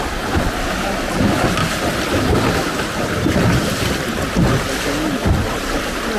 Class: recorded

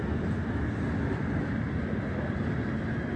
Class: recorded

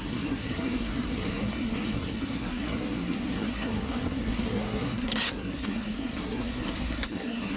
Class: remade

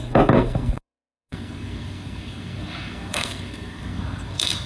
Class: remade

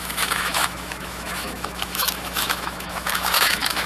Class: remade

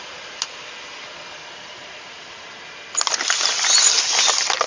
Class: recorded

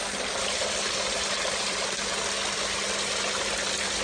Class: recorded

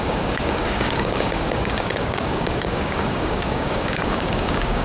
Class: remade